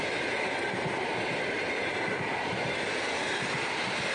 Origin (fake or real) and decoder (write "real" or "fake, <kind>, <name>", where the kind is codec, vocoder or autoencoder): real